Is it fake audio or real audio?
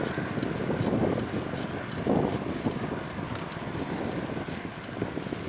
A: real